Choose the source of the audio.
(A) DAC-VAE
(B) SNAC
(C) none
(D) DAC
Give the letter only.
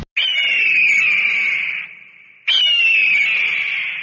C